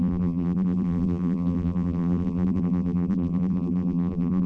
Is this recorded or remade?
remade